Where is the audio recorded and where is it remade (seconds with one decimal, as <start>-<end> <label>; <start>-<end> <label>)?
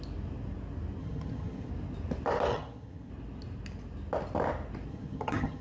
0.0-1.0 recorded; 1.0-1.7 remade; 1.7-2.5 recorded; 2.5-3.1 remade; 3.1-4.9 recorded; 4.9-5.6 remade